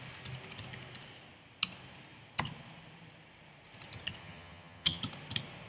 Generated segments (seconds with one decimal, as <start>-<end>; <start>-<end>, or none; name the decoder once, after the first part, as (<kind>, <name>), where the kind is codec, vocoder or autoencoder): 4.2-5.0 (vocoder, HiFi-GAN)